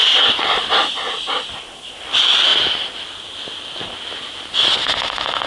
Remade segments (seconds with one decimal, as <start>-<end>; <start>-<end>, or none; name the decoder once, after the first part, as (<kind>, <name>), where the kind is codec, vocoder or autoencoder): 4.8-5.5 (autoencoder, DAC-VAE)